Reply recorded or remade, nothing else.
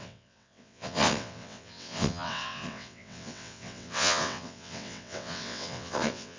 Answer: remade